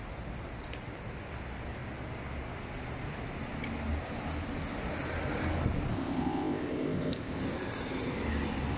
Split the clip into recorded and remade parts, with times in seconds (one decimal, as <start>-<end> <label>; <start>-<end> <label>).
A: 0.0-5.9 recorded; 5.9-7.4 remade; 7.4-8.8 recorded

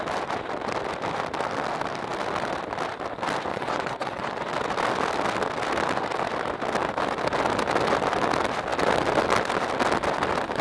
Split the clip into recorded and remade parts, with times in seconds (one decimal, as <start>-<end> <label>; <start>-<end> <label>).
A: 0.0-3.5 recorded; 3.5-4.4 remade; 4.4-10.6 recorded

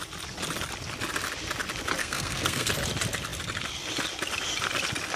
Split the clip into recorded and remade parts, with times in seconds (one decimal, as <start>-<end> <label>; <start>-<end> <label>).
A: 0.0-2.0 recorded; 2.0-2.7 remade; 2.7-5.2 recorded

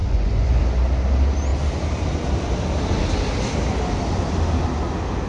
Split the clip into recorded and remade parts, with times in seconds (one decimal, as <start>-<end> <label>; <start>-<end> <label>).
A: 0.0-0.6 remade; 0.6-5.3 recorded

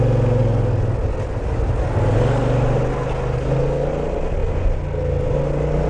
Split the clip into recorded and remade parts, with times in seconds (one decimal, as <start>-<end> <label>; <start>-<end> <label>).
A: 0.0-5.9 recorded